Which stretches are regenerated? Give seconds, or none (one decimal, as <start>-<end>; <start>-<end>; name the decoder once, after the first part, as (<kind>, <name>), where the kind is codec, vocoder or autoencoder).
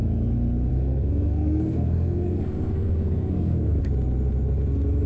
0.7-3.8 (codec, SNAC)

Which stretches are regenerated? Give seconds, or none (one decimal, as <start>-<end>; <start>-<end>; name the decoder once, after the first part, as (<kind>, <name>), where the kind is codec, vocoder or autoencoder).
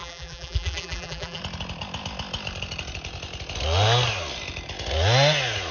0.0-1.4 (vocoder, BigVGAN v2)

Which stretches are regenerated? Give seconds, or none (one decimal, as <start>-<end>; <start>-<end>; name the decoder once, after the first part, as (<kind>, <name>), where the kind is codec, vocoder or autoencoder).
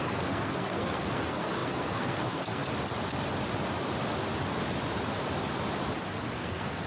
0.0-2.6 (codec, SNAC); 6.3-6.9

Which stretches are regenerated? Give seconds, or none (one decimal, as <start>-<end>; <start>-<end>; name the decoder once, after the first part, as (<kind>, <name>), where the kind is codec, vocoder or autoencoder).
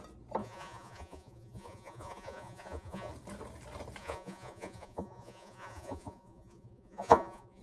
0.4-3.1 (vocoder, Vocos); 4.0-7.6